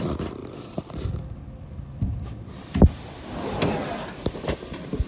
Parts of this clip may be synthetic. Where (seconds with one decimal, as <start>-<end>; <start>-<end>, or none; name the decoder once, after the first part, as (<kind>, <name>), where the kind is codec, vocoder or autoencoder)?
0.4-2.4 (vocoder, BigVGAN v2)